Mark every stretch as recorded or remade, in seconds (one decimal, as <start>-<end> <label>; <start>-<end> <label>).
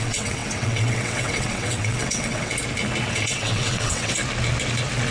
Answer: 0.0-2.5 remade; 2.5-3.1 recorded; 3.1-4.2 remade; 4.2-5.1 recorded